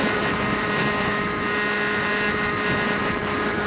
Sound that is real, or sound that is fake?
fake